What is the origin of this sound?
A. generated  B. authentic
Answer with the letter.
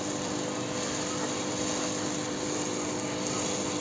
B